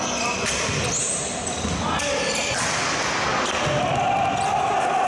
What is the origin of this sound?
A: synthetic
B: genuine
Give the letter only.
B